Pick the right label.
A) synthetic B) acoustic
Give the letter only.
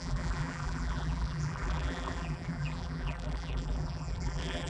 A